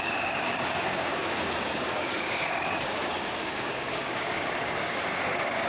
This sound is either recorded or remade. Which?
remade